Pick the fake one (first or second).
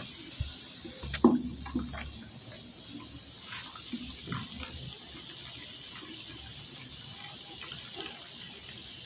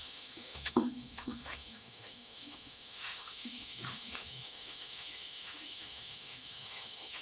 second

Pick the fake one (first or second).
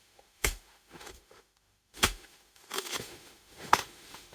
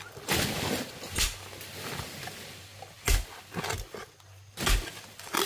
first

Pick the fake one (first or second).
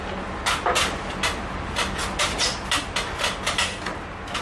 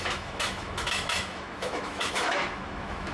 second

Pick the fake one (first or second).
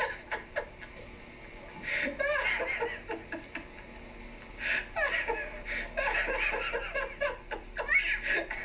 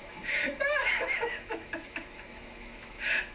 second